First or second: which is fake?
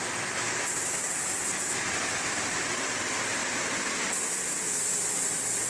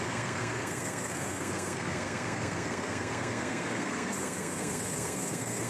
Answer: second